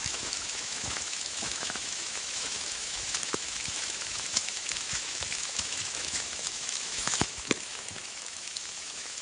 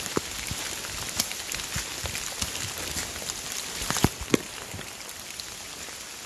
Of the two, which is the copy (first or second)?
first